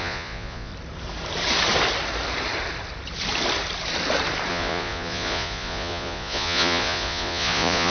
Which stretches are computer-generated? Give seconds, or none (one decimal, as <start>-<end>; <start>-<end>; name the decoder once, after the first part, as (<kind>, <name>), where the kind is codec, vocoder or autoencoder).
0.0-0.7 (vocoder, Vocos); 4.5-7.9